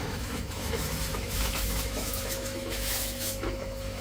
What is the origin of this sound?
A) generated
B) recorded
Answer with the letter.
A